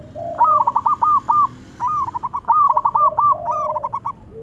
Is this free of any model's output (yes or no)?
yes